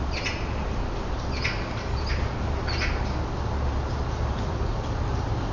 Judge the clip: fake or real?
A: real